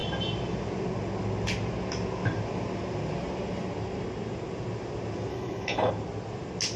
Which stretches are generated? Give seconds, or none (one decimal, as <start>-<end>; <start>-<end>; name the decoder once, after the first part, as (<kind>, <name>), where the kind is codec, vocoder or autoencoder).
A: 5.3-5.9 (codec, HILCodec)